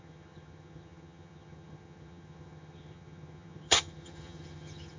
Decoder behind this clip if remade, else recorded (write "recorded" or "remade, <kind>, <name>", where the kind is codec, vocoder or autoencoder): remade, vocoder, HiFi-GAN